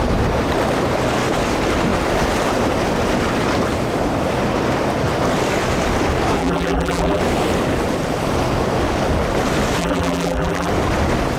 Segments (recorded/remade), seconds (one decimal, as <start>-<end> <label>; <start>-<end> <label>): 0.0-6.4 recorded; 6.4-7.2 remade; 7.2-9.8 recorded; 9.8-10.7 remade; 10.7-11.4 recorded